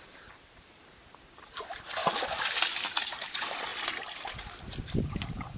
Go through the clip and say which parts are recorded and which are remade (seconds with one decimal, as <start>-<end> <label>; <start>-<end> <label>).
0.0-2.0 remade; 2.0-3.0 recorded; 3.0-3.7 remade; 3.7-5.0 recorded; 5.0-5.6 remade